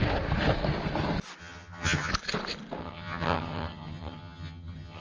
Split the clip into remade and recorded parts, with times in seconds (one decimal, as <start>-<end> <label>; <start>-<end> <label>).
0.0-1.4 recorded; 1.4-2.1 remade; 2.1-2.8 recorded; 2.8-5.0 remade